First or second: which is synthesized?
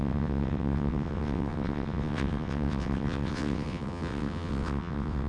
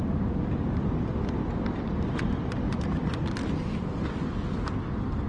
first